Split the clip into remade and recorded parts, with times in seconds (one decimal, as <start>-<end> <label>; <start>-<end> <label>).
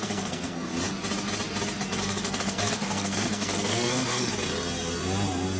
0.0-0.7 remade; 0.7-2.0 recorded; 2.0-4.3 remade; 4.3-5.6 recorded